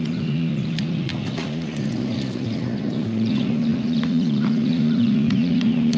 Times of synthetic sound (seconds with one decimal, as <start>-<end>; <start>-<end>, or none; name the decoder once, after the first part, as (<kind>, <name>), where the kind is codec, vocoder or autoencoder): 0.0-6.0 (vocoder, Vocos)